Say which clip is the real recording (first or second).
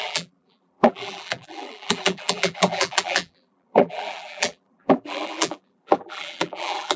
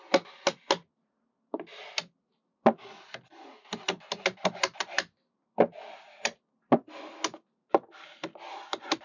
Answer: second